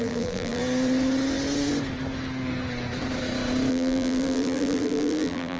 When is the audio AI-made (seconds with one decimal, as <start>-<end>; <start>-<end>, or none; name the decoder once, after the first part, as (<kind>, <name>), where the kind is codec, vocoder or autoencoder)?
0.0-0.6 (vocoder, BigVGAN v2); 3.7-5.6